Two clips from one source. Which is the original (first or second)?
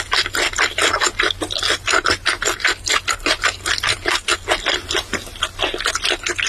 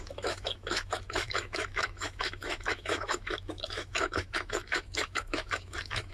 first